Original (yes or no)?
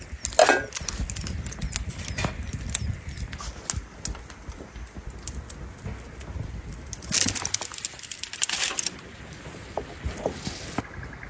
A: yes